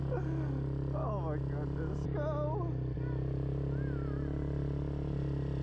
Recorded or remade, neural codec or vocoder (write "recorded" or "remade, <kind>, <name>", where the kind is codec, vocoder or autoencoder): recorded